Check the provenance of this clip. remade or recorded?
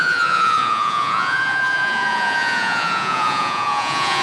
remade